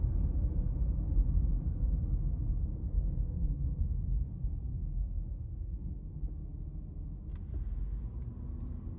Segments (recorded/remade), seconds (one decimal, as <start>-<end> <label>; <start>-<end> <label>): 0.0-2.8 recorded; 2.8-4.0 remade; 4.0-4.7 recorded; 4.7-6.2 remade; 6.2-9.0 recorded

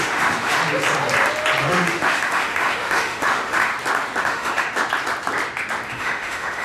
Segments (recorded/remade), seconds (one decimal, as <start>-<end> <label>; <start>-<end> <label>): 0.0-0.6 remade; 0.6-1.6 recorded; 1.6-3.7 remade; 3.7-4.2 recorded; 4.2-4.7 remade; 4.7-5.9 recorded; 5.9-6.6 remade